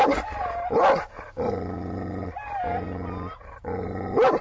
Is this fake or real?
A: real